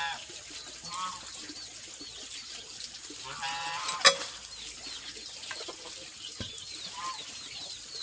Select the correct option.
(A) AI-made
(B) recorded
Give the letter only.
B